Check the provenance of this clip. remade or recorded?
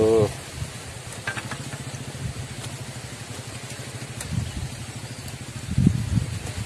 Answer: recorded